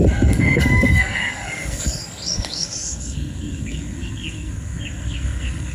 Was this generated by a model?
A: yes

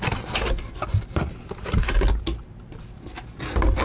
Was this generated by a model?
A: no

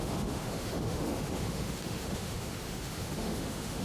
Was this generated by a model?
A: yes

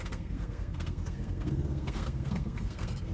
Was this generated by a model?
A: yes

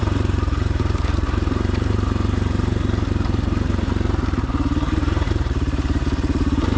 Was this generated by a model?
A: yes